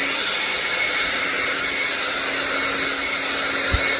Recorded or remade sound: recorded